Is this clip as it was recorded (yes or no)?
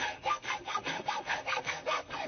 no